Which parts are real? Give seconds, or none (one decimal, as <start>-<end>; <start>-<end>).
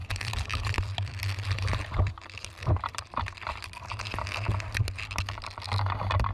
3.8-6.3